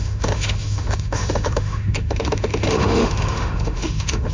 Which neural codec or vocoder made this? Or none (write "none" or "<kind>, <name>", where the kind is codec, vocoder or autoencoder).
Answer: autoencoder, DAC-VAE